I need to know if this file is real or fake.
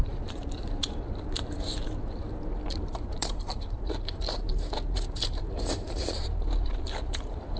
fake